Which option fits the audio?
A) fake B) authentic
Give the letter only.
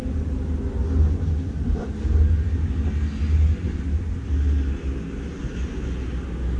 B